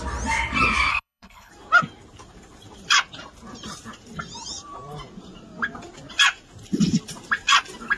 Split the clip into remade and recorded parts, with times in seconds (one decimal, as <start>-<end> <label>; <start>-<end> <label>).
0.0-0.9 recorded; 0.9-1.5 remade; 1.5-8.0 recorded